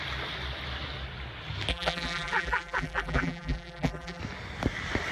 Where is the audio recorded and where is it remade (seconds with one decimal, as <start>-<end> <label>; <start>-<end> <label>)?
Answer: 0.0-1.7 recorded; 1.7-4.2 remade; 4.2-5.1 recorded